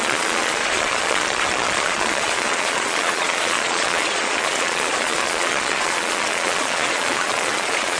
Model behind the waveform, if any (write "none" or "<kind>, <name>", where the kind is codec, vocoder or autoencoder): vocoder, Vocos